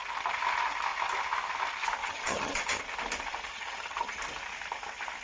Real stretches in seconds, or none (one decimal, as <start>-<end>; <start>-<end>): 0.0-2.0; 2.8-3.5; 4.2-5.2